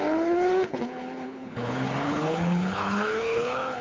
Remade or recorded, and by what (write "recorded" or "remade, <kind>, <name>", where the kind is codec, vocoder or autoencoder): remade, codec, HILCodec